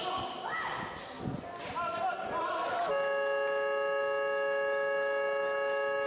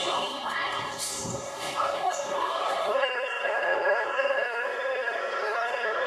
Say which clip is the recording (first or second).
first